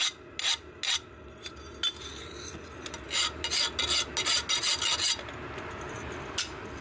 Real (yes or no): yes